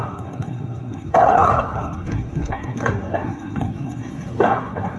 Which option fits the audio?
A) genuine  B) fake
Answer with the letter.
B